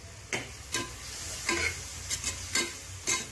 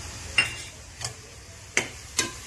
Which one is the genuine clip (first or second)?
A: first